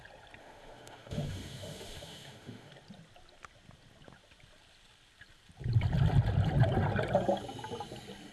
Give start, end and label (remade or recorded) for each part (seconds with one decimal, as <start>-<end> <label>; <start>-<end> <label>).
0.0-0.4 recorded; 0.4-2.7 remade; 2.7-8.3 recorded